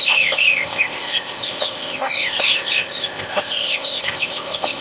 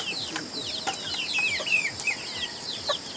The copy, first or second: first